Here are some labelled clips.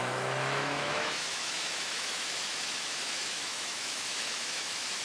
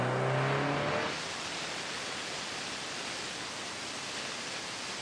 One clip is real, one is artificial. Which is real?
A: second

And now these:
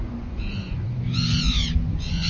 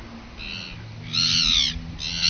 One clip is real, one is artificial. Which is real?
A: second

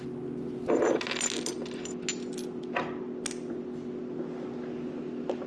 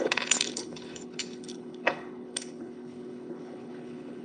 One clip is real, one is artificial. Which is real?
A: first